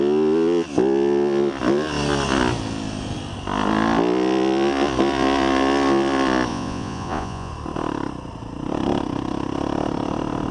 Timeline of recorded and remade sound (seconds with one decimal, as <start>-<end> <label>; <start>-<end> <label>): 0.0-6.5 recorded; 6.5-7.5 remade; 7.5-10.5 recorded